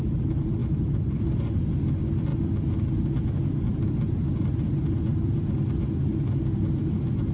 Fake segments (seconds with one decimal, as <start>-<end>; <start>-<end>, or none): none